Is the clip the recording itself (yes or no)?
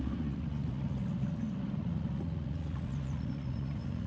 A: no